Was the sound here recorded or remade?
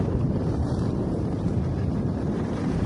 remade